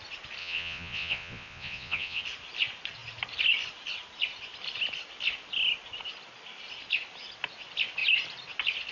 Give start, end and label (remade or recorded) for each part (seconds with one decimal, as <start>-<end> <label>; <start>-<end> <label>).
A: 0.0-0.4 recorded; 0.4-2.2 remade; 2.2-8.9 recorded